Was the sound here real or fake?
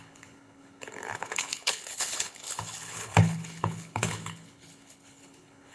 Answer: fake